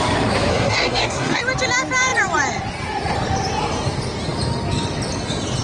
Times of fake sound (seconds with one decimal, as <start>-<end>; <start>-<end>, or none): 0.5-1.4